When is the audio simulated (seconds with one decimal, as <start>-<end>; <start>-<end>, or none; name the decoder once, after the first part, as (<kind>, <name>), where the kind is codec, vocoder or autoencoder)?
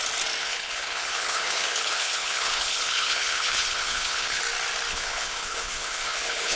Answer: 0.4-4.4 (codec, HILCodec); 4.9-6.6